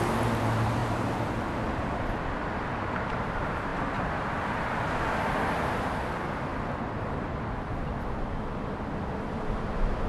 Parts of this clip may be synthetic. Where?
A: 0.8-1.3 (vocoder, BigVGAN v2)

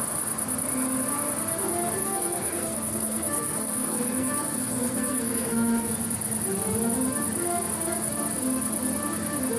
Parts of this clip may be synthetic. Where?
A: 2.0-5.9 (codec, SNAC)

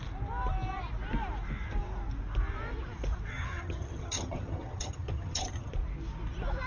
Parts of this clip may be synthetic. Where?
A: 3.3-5.7 (vocoder, HiFi-GAN)

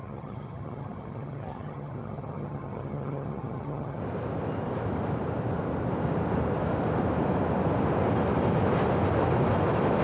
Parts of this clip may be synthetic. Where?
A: 0.0-4.0 (vocoder, HiFi-GAN)

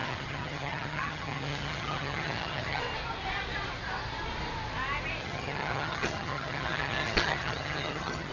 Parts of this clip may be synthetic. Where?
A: 0.0-2.8 (vocoder, HiFi-GAN); 5.2-8.3

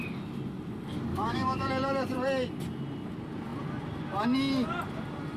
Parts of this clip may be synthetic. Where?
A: 1.1-1.7 (autoencoder, DAC-VAE)

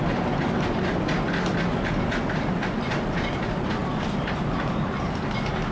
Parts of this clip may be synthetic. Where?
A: 3.8-5.0 (vocoder, BigVGAN v2)